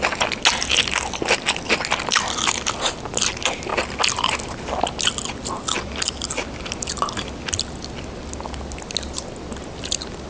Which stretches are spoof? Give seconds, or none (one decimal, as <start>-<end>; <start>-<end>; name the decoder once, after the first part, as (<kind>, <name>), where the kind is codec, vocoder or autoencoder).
none